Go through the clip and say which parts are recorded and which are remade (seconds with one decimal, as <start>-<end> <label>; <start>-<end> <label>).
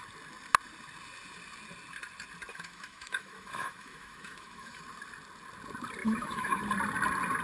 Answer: 0.0-2.5 recorded; 2.5-4.8 remade; 4.8-6.0 recorded; 6.0-6.6 remade; 6.6-7.4 recorded